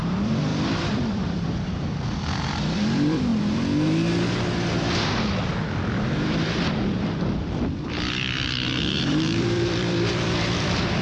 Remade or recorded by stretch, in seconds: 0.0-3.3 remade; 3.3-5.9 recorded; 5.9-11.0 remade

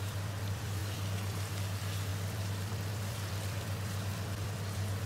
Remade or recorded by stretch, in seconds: 0.0-5.1 remade

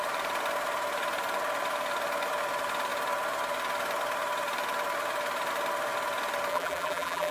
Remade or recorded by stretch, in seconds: 0.0-6.5 recorded; 6.5-7.3 remade

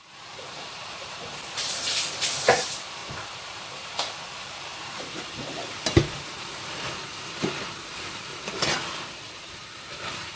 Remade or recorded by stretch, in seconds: 0.0-10.4 remade